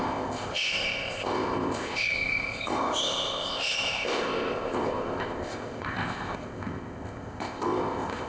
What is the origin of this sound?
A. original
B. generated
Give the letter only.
B